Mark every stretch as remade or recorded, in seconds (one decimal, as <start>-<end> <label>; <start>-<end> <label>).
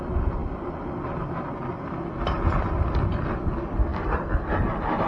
0.0-5.1 recorded